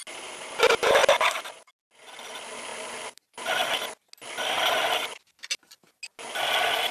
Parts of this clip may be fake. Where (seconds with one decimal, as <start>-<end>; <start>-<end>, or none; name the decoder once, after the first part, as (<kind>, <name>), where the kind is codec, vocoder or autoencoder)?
none